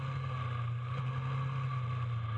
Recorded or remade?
recorded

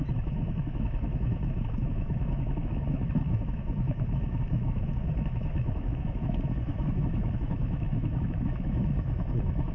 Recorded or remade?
remade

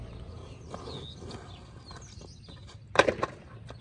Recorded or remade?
recorded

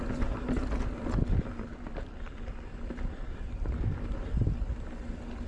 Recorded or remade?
recorded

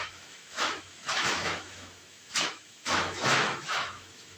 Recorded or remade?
remade